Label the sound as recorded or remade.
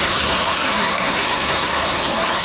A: remade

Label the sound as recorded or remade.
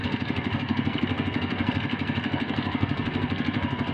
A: remade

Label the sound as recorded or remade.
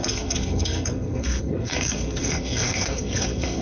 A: remade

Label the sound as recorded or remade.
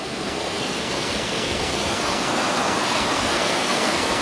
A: remade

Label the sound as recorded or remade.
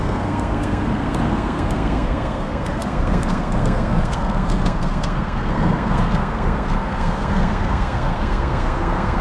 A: remade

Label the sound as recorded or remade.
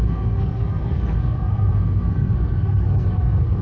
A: remade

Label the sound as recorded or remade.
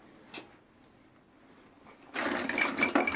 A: recorded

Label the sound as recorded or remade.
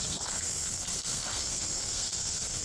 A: remade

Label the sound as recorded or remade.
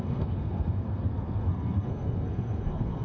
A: remade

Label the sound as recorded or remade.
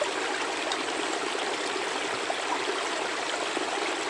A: recorded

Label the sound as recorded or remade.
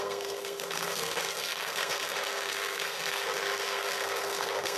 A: remade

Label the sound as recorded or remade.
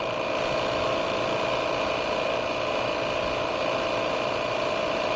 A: recorded